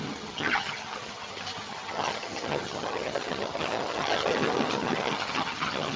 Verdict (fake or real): fake